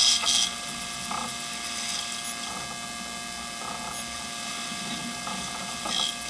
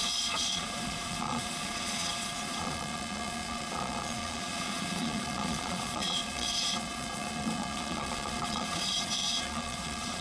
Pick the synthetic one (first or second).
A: second